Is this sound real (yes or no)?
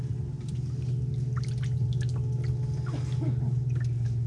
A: yes